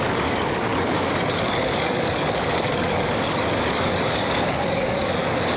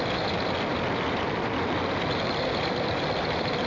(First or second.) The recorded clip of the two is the second